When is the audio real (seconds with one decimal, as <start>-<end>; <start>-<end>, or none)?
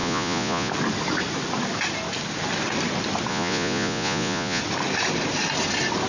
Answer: 0.7-3.3; 4.6-6.1